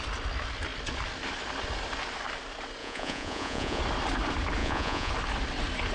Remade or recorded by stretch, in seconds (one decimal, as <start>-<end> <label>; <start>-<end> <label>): 0.0-2.8 recorded; 2.8-3.8 remade; 3.8-4.6 recorded; 4.6-5.1 remade; 5.1-5.9 recorded